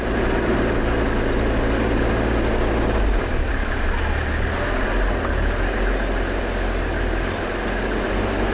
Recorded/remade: recorded